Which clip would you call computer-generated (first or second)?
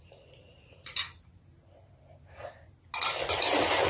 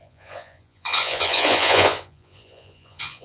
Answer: second